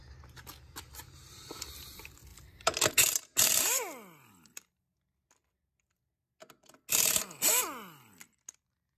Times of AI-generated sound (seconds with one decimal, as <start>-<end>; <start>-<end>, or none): none